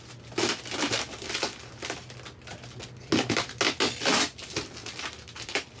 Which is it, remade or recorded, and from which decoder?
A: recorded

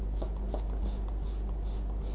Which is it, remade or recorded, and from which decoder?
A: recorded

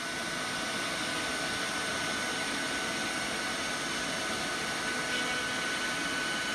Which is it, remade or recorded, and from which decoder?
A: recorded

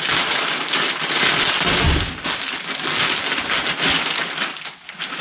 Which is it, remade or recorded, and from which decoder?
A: recorded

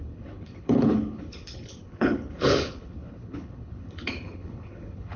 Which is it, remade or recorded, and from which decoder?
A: remade, codec, HILCodec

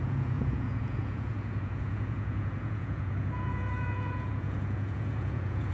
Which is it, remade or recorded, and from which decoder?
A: remade, vocoder, Vocos